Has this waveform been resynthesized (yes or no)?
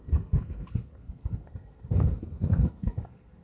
yes